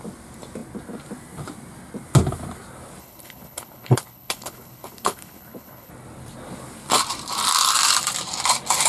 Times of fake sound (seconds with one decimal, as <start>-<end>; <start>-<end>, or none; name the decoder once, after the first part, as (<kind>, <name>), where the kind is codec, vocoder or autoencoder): 3.0-5.9 (codec, HILCodec)